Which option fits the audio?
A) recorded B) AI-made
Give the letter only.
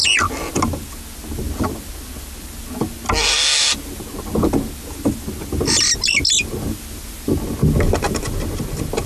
A